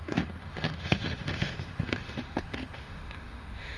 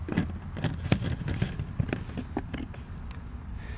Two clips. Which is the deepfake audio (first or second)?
first